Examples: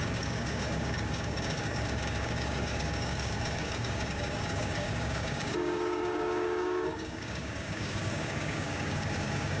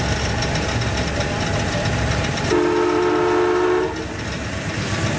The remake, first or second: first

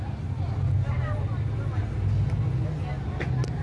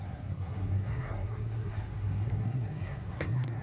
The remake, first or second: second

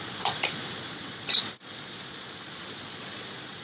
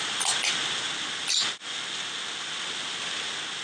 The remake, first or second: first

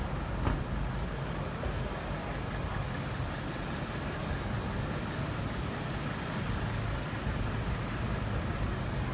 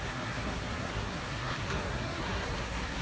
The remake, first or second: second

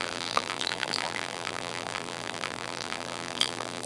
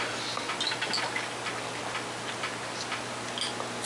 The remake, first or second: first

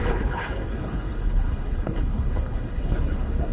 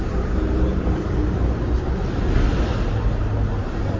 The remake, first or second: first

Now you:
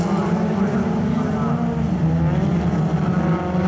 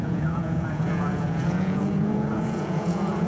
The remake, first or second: second